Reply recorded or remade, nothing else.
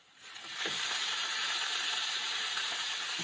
remade